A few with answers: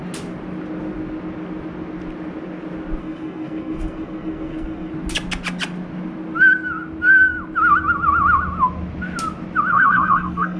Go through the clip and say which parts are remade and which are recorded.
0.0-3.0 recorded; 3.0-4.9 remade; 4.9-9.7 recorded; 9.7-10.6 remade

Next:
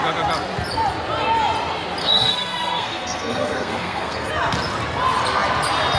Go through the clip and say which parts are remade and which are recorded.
0.0-2.0 recorded; 2.0-4.3 remade; 4.3-6.0 recorded

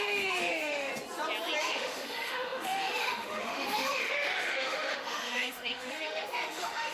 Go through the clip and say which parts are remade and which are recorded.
0.0-0.9 remade; 0.9-1.6 recorded; 1.6-6.9 remade

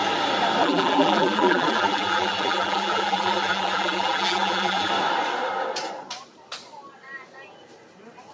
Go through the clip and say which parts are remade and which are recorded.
0.0-0.6 recorded; 0.6-4.9 remade; 4.9-8.3 recorded

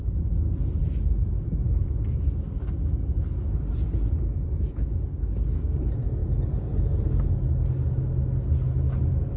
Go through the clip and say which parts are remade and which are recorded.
0.0-9.4 recorded

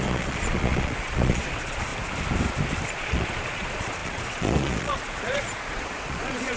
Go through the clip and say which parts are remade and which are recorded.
0.0-1.9 remade; 1.9-2.9 recorded; 2.9-6.6 remade

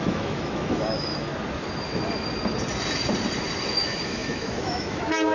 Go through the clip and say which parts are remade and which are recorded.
0.0-1.3 remade; 1.3-3.7 recorded; 3.7-5.3 remade

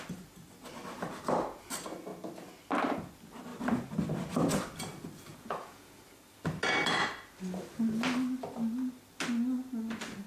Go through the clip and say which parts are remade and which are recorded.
0.0-5.3 recorded; 5.3-6.0 remade; 6.0-10.3 recorded